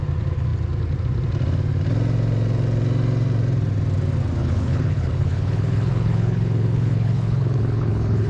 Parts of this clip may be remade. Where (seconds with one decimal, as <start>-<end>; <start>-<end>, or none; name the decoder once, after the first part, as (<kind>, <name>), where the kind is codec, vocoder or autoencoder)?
4.4-8.3 (codec, HILCodec)